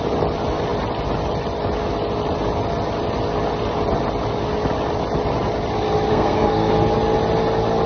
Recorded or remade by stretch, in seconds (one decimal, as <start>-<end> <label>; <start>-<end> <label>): 0.0-6.1 recorded; 6.1-6.7 remade; 6.7-7.9 recorded